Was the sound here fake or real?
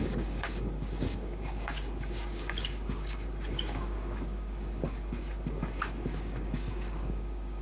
fake